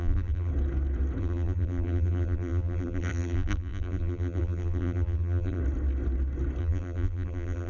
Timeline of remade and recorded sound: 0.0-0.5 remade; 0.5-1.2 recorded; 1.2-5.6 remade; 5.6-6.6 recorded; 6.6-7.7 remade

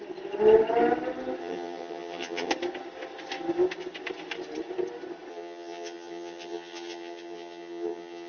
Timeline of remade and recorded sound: 0.0-1.4 recorded; 1.4-2.5 remade; 2.5-5.3 recorded; 5.3-8.3 remade

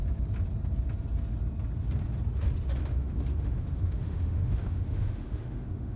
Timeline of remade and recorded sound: 0.0-2.8 recorded; 2.8-6.0 remade

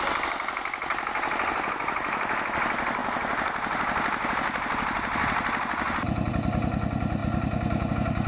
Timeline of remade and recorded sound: 0.0-8.3 recorded